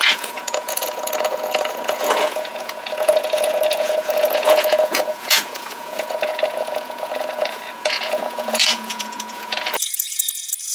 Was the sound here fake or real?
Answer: fake